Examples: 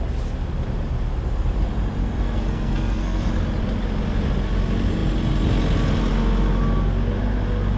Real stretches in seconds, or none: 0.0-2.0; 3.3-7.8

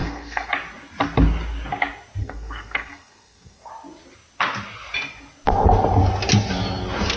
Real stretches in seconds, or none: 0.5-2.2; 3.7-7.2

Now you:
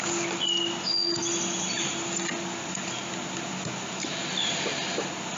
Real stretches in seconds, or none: 0.0-5.4

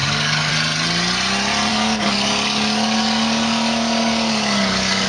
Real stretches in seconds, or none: 0.5-1.7

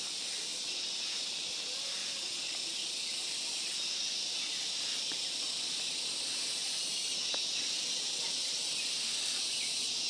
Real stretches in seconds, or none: 0.0-10.1